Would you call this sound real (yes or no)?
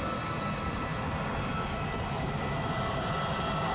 yes